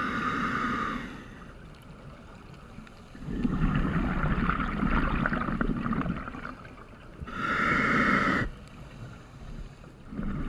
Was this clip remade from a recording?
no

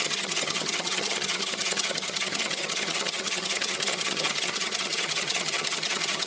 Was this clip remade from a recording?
yes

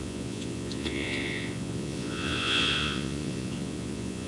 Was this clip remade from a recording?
yes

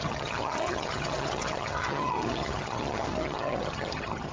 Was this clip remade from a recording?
yes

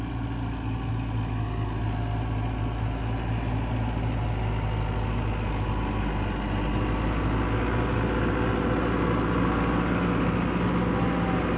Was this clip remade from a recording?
no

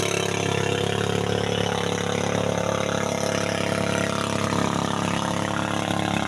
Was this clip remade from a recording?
no